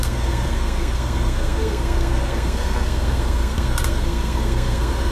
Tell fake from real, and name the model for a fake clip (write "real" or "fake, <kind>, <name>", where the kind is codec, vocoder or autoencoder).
fake, codec, SNAC